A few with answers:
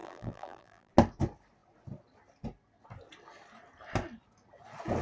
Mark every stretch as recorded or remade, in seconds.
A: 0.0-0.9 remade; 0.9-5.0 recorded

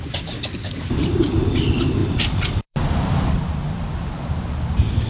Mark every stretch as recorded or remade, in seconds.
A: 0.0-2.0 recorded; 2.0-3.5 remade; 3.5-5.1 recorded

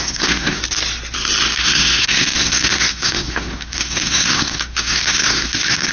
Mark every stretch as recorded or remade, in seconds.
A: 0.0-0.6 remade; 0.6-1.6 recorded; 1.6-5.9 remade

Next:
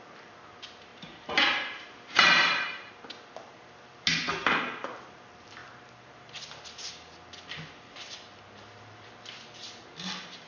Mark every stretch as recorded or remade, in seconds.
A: 0.0-0.9 recorded; 0.9-2.9 remade; 2.9-10.5 recorded

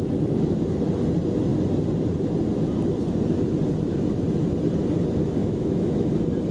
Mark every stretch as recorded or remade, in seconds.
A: 0.0-5.4 recorded; 5.4-6.1 remade; 6.1-6.5 recorded

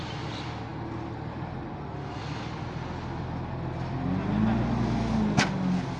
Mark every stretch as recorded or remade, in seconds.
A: 0.0-6.0 recorded

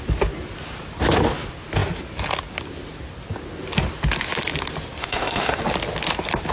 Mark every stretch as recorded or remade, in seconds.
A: 0.0-5.0 recorded; 5.0-5.6 remade; 5.6-6.5 recorded